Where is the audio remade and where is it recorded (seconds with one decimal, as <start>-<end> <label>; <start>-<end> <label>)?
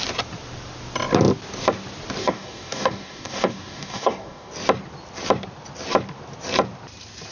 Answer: 0.0-2.2 recorded; 2.2-4.5 remade; 4.5-7.3 recorded